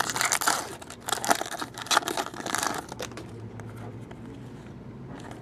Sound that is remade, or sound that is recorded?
recorded